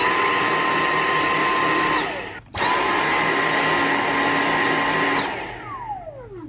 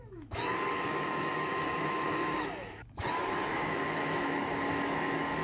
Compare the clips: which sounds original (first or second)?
first